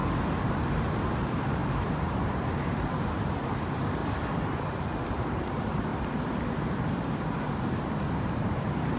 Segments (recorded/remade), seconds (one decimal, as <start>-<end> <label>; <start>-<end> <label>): 0.0-4.0 remade; 4.0-4.7 recorded; 4.7-5.9 remade; 5.9-8.0 recorded; 8.0-9.0 remade